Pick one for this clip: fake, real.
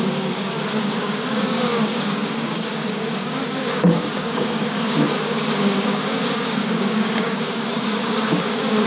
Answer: fake